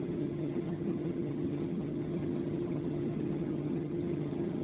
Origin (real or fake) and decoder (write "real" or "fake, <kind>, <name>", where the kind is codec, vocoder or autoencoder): fake, vocoder, HiFi-GAN